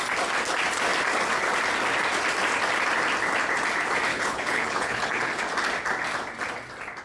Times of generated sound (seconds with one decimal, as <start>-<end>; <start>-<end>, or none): 4.1-5.4